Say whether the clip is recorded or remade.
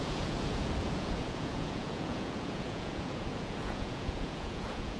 remade